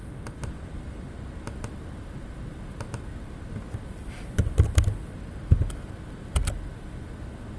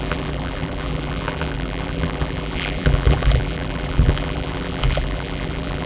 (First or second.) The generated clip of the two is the second